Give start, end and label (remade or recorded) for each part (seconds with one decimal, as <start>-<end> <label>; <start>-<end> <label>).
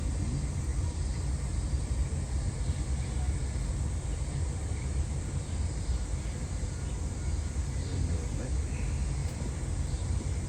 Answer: 0.0-9.2 recorded; 9.2-9.9 remade; 9.9-10.5 recorded